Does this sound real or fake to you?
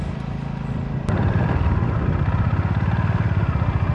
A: real